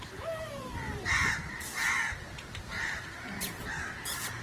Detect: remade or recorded remade